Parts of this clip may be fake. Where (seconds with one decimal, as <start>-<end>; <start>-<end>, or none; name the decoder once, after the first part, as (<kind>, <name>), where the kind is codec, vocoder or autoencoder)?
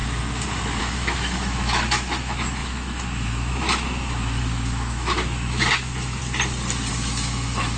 0.8-6.2 (autoencoder, DAC-VAE); 6.9-7.8